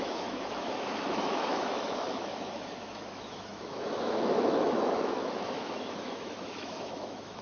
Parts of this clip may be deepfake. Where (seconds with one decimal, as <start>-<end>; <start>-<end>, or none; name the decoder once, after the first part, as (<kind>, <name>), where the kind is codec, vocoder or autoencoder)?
0.0-7.4 (autoencoder, DAC-VAE)